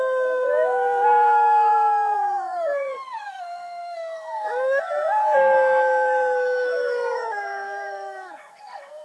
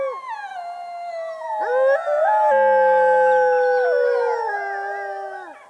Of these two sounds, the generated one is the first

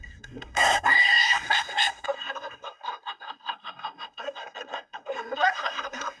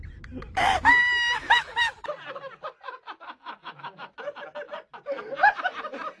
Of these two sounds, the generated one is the first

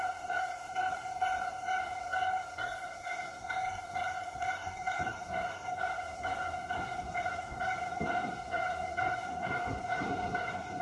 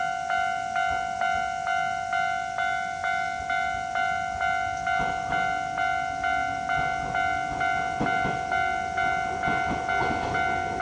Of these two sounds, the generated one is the first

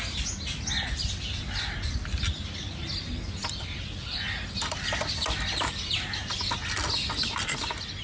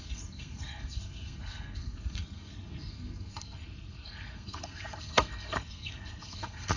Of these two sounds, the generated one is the second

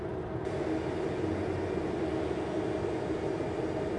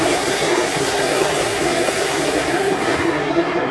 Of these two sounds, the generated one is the second